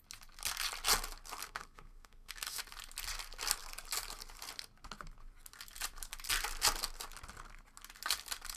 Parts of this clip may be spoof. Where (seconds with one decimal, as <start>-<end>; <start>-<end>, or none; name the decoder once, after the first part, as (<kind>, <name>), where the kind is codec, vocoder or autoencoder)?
1.4-2.6 (codec, SNAC)